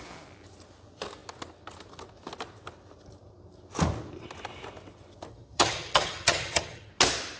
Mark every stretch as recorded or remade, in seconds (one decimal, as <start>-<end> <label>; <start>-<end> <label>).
0.0-5.3 recorded; 5.3-6.9 remade; 6.9-7.4 recorded